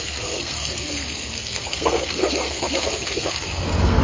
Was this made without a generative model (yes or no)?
no